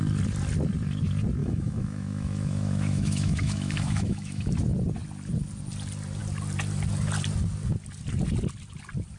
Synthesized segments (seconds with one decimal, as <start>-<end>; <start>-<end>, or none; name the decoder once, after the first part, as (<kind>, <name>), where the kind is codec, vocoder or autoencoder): 1.4-4.5 (autoencoder, DAC-VAE)